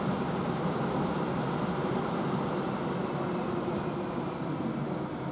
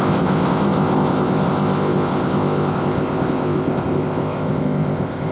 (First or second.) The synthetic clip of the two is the second